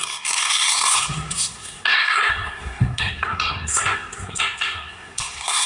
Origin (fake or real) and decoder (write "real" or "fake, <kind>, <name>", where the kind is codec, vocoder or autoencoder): fake, codec, SNAC